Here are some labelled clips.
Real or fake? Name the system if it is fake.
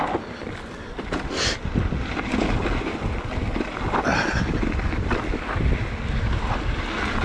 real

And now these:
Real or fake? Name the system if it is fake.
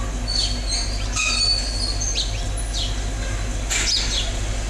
real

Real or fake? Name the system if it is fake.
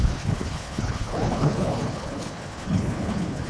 fake, codec, HILCodec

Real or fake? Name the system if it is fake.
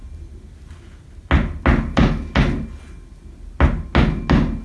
real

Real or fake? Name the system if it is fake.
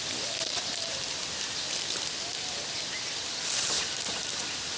real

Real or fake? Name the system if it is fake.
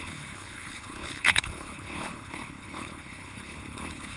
fake, codec, HILCodec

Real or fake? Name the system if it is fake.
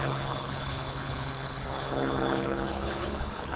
fake, codec, HILCodec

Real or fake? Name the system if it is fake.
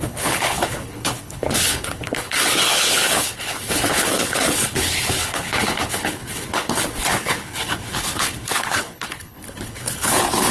fake, codec, HILCodec